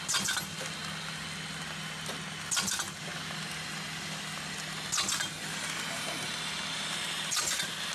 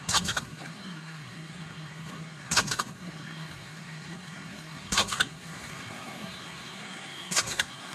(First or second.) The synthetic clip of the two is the second